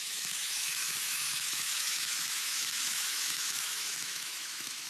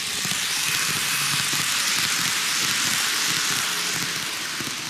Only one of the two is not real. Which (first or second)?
first